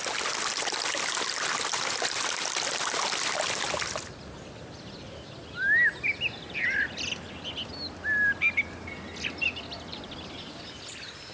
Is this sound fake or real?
real